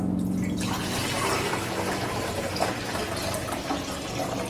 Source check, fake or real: real